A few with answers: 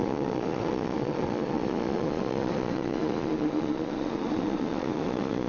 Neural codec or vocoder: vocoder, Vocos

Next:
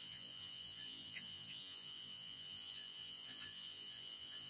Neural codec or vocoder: vocoder, Vocos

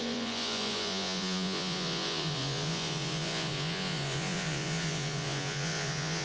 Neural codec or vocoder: vocoder, Vocos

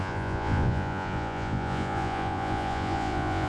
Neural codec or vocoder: vocoder, Vocos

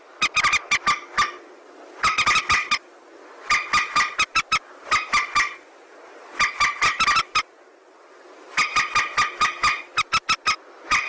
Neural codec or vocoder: none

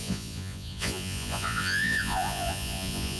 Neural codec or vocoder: vocoder, Vocos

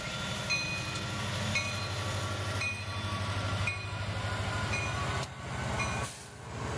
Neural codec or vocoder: none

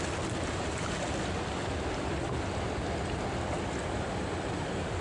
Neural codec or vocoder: none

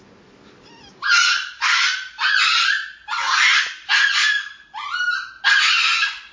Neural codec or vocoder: none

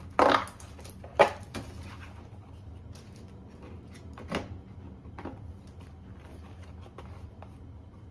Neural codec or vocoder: none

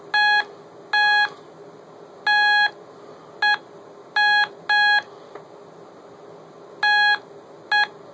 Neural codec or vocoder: none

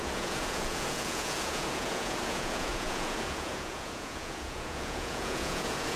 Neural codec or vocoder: vocoder, Vocos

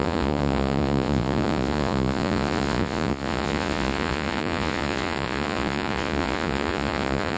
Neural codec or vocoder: vocoder, Vocos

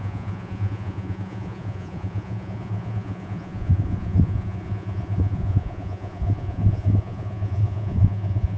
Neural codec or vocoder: vocoder, Vocos